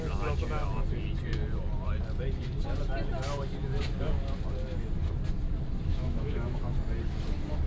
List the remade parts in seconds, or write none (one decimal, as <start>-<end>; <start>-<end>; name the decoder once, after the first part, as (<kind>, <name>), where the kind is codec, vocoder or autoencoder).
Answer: 5.9-6.7 (autoencoder, DAC-VAE)